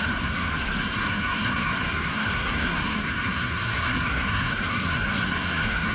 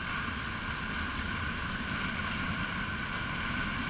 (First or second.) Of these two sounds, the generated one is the first